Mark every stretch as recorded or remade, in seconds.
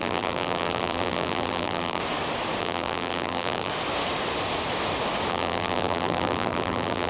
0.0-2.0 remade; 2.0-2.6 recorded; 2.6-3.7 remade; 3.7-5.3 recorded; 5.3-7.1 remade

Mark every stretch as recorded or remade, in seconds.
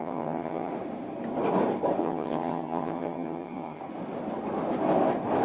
0.0-0.7 remade; 0.7-2.0 recorded; 2.0-3.8 remade; 3.8-5.4 recorded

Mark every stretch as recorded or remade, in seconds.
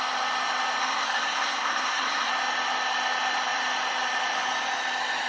0.0-0.8 recorded; 0.8-2.3 remade; 2.3-5.3 recorded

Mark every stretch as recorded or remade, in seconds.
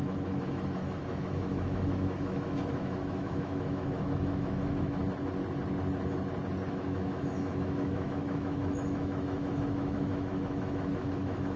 0.0-5.0 remade; 5.0-6.7 recorded; 6.7-11.6 remade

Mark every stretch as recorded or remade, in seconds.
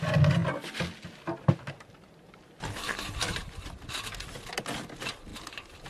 0.0-5.9 recorded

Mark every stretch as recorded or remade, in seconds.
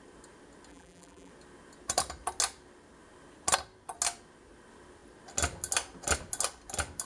0.0-0.7 recorded; 0.7-1.3 remade; 1.3-7.1 recorded